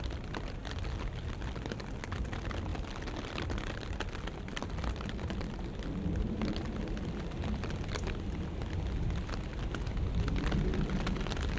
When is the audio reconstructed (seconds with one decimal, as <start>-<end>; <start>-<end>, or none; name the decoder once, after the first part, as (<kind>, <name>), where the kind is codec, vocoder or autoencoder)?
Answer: none